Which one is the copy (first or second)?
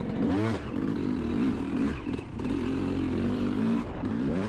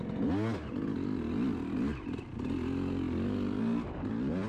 first